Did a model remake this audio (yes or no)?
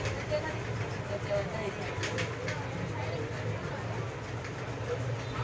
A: no